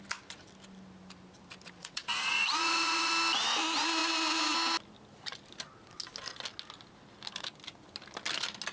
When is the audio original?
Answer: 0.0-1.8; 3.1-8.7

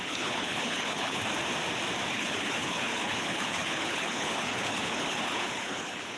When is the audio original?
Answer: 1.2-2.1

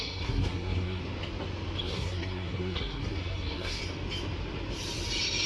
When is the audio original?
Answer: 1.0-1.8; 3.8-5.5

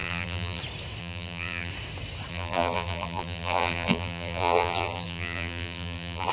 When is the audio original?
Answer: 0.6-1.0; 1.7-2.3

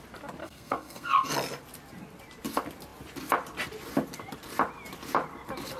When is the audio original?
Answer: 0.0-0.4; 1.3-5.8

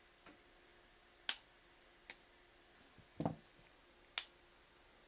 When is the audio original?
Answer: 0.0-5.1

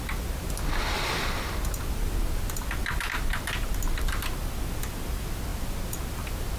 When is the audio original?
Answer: 0.0-6.6

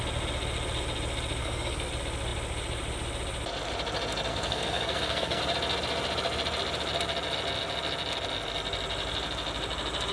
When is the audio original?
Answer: 0.0-1.4; 1.9-4.3; 5.4-10.1